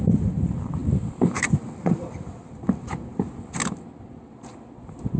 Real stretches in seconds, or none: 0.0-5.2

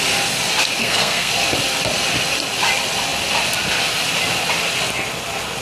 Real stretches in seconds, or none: 0.0-0.8; 1.3-5.6

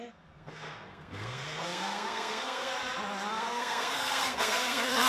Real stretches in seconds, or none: 2.7-3.3

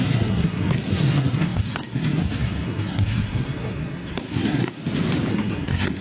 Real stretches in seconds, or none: 4.8-5.3

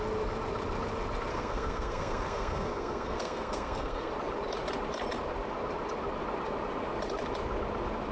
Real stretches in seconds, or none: 0.0-1.3; 4.1-8.1

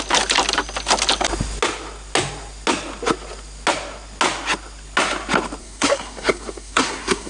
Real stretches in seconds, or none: 0.0-5.6